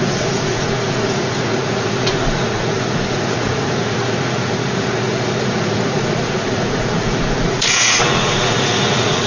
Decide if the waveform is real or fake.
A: fake